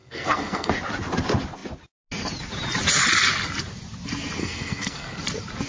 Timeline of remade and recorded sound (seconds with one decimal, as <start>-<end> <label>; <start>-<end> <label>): 0.0-0.7 remade; 0.7-4.4 recorded; 4.4-5.2 remade; 5.2-5.7 recorded